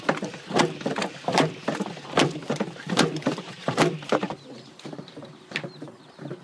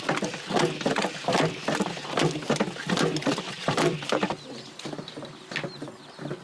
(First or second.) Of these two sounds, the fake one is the first